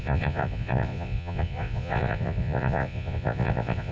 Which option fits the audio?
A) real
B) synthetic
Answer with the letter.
B